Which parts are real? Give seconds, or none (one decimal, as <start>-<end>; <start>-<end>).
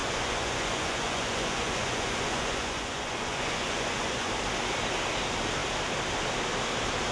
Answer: 4.3-7.1